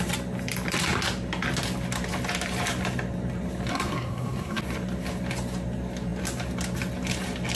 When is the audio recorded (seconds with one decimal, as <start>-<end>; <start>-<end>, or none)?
0.0-3.7; 4.6-7.5